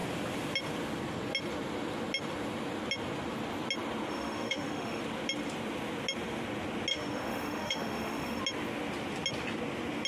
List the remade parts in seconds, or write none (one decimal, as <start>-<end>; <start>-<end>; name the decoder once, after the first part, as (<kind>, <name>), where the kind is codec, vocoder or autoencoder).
4.1-5.0 (autoencoder, DAC-VAE); 6.9-8.4